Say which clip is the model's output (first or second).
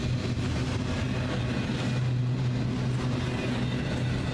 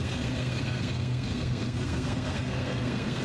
second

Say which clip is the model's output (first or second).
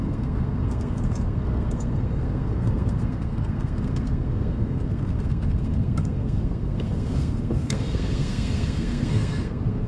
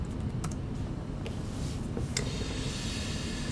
first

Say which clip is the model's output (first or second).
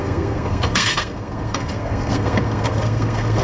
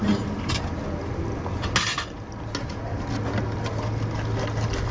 first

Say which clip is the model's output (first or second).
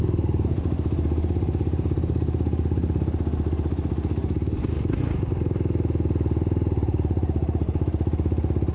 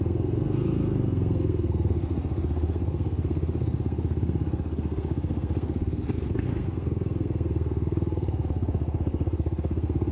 second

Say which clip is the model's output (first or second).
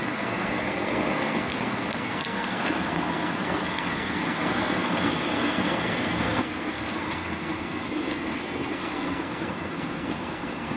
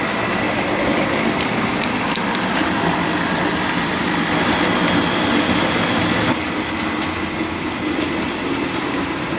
first